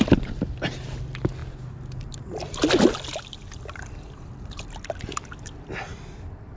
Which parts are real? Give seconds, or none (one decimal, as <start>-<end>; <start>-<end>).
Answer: 0.0-6.6